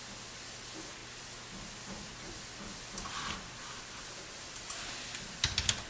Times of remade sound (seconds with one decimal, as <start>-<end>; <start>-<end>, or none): none